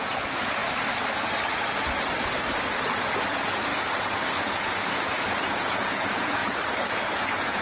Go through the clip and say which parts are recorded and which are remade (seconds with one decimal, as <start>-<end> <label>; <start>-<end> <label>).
0.0-0.6 remade; 0.6-3.0 recorded; 3.0-3.7 remade; 3.7-4.4 recorded; 4.4-6.4 remade; 6.4-7.1 recorded; 7.1-7.6 remade